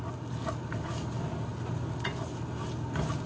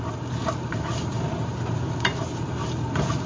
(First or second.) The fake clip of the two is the second